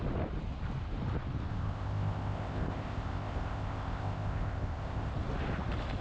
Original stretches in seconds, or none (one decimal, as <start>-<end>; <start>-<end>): 0.0-1.5; 5.1-6.0